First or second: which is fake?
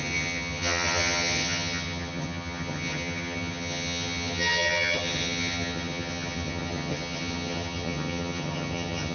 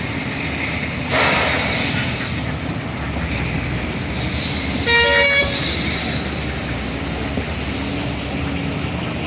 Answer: first